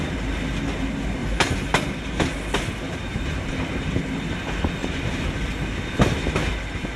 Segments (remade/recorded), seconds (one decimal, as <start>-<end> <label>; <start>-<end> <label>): 0.0-1.2 recorded; 1.2-2.2 remade; 2.2-3.1 recorded; 3.1-3.8 remade; 3.8-4.8 recorded; 4.8-5.3 remade; 5.3-7.0 recorded